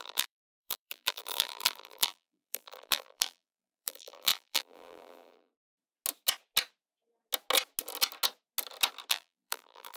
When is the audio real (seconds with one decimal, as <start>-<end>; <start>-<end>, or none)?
5.5-9.1